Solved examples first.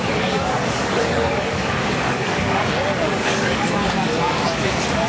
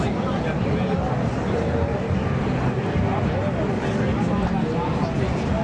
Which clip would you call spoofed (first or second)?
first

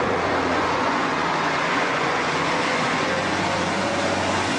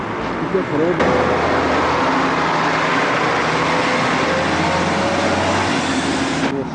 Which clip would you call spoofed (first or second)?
first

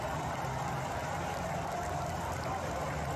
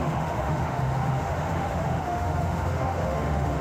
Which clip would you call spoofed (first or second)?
second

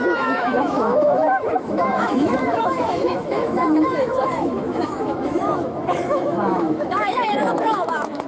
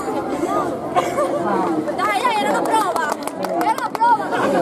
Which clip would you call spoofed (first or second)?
first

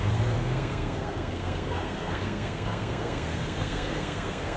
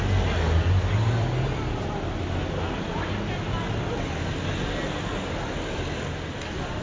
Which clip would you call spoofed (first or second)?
first